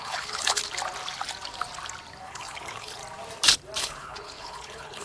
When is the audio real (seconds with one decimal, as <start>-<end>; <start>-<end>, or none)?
0.6-2.2; 3.0-3.8

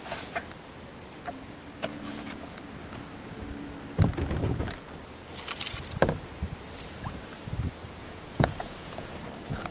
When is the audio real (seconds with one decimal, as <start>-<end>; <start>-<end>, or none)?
0.0-1.9; 2.6-8.0; 9.1-9.7

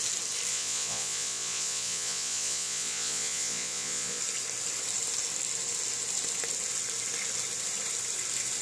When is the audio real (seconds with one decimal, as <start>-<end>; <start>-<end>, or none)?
0.0-0.5; 4.2-8.6